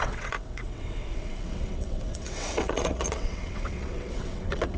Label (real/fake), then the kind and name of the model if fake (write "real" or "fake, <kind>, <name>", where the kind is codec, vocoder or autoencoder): fake, vocoder, WaveNeXt